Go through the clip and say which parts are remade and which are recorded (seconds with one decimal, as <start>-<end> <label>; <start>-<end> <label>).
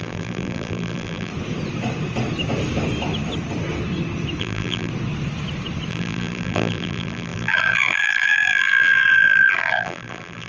0.0-1.3 remade; 1.3-4.4 recorded; 4.4-4.9 remade; 4.9-5.9 recorded; 5.9-10.5 remade